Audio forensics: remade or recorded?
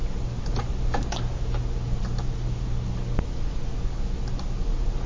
recorded